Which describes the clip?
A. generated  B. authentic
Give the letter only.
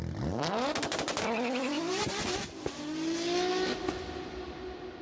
B